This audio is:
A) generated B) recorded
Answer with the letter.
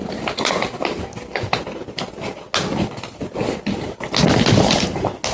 B